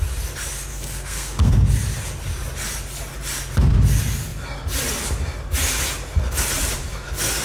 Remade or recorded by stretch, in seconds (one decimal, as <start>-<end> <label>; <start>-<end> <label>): 0.0-0.7 recorded; 0.7-1.5 remade; 1.5-7.4 recorded

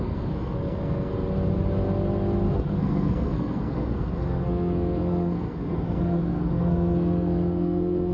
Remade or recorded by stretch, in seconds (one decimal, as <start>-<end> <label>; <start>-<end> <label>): 0.0-1.1 remade; 1.1-2.5 recorded; 2.5-8.1 remade

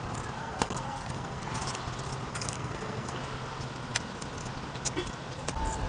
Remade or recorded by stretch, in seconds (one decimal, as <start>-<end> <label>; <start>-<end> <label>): 0.0-0.4 recorded; 0.4-1.5 remade; 1.5-2.3 recorded; 2.3-3.2 remade; 3.2-5.9 recorded

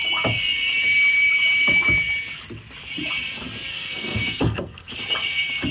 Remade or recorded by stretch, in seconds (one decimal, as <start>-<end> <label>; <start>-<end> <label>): 0.0-3.7 recorded; 3.7-4.9 remade; 4.9-5.7 recorded

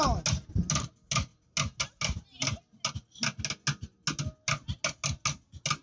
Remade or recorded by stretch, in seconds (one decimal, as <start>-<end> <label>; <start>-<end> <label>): 0.0-5.8 recorded

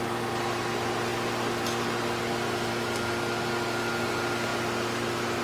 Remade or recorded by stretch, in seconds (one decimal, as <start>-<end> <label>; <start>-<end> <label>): 0.0-5.4 recorded

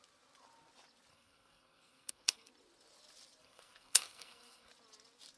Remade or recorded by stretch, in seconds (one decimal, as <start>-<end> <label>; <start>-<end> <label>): 0.0-1.1 recorded; 1.1-2.5 remade; 2.5-3.4 recorded; 3.4-4.7 remade; 4.7-5.4 recorded